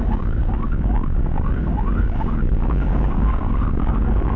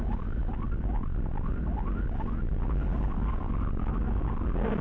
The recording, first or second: second